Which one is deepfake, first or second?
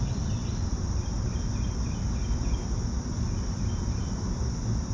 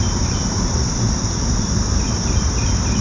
second